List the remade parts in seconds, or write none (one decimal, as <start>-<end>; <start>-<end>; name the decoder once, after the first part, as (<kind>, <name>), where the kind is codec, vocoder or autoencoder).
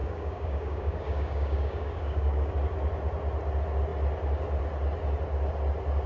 0.0-2.5 (codec, DAC)